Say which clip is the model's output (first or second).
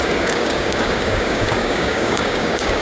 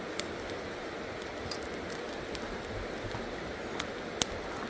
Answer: first